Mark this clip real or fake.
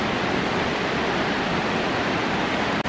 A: fake